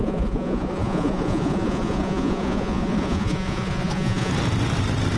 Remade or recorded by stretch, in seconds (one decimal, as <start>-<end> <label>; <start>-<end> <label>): 0.0-4.3 remade; 4.3-5.2 recorded